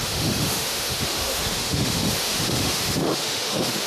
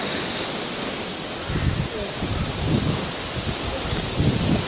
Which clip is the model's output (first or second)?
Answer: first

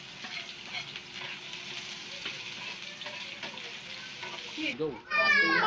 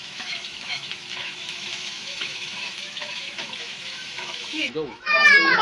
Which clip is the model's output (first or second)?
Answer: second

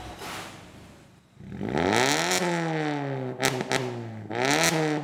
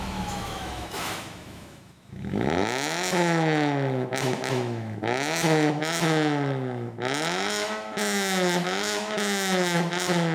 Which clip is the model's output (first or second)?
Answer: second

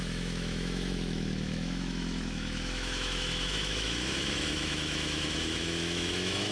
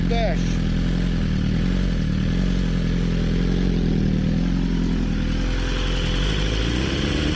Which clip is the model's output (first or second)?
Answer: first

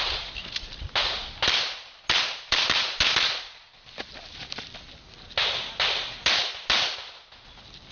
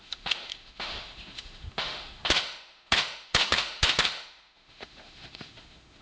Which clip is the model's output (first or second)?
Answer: second